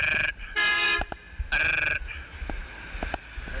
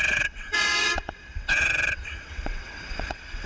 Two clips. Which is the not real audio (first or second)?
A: second